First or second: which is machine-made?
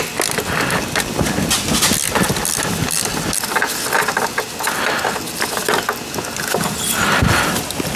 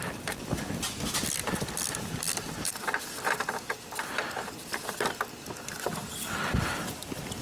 second